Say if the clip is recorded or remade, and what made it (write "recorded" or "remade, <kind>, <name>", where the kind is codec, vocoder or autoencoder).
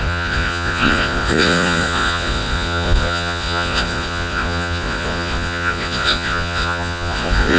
remade, vocoder, Vocos